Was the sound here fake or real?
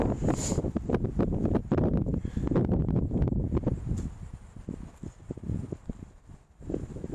real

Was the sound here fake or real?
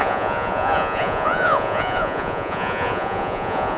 fake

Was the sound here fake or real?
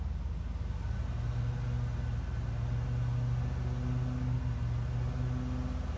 real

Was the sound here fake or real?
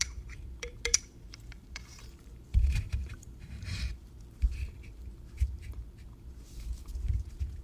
fake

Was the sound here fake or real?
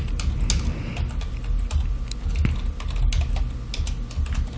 real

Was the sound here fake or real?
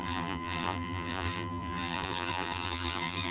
fake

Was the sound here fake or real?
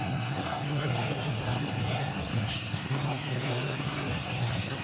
fake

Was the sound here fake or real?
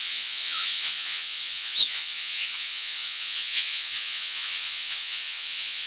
fake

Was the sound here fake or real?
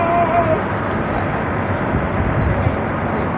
real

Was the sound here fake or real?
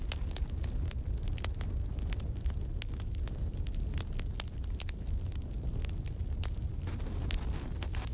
real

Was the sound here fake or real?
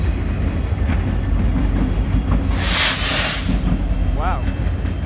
real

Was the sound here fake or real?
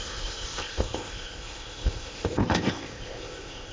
fake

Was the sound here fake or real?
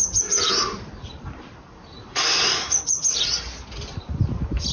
fake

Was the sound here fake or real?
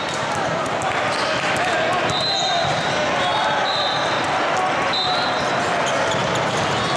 real